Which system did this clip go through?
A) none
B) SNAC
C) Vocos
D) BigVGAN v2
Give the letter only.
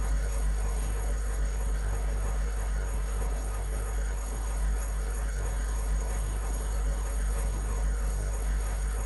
B